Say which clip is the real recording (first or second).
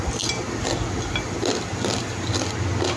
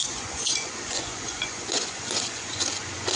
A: first